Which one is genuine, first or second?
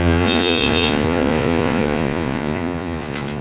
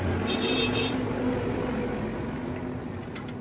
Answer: second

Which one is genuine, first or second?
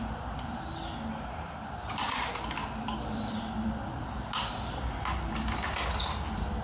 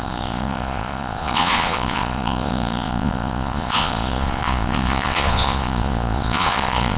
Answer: first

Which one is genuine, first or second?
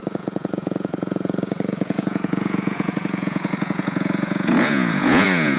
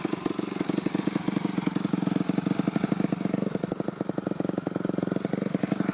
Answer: second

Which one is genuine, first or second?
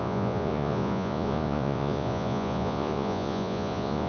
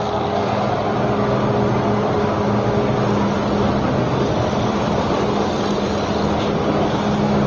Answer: second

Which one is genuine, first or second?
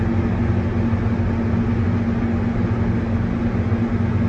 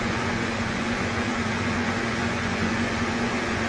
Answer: first